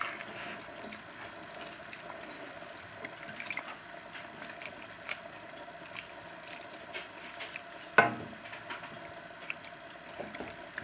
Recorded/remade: recorded